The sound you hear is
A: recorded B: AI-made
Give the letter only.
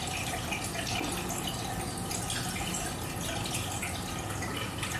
A